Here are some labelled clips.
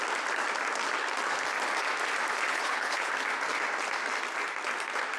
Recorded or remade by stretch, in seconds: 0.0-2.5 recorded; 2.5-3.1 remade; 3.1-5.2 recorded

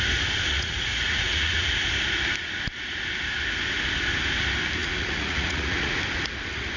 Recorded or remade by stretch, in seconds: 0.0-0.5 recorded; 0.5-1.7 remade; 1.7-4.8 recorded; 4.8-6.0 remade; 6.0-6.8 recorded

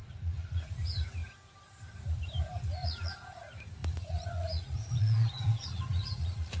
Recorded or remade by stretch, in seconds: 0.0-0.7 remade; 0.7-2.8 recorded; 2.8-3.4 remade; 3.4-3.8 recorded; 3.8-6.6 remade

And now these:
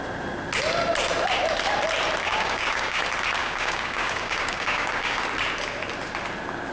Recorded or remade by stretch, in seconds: 0.0-2.2 recorded; 2.2-3.0 remade; 3.0-3.4 recorded; 3.4-5.2 remade; 5.2-6.7 recorded

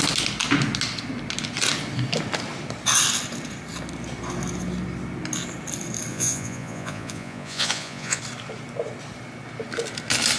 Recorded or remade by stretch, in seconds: 0.0-6.1 recorded; 6.1-8.2 remade; 8.2-10.4 recorded